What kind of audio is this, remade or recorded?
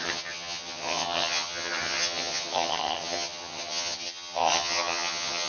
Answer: remade